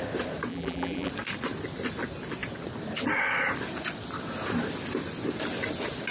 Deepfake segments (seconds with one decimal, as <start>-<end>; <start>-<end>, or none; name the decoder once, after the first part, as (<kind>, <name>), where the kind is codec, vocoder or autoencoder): 0.5-1.1 (vocoder, BigVGAN v2)